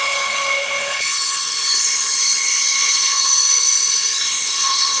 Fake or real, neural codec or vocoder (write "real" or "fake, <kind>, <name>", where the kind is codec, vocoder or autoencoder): fake, codec, HILCodec